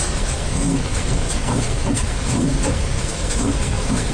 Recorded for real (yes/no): no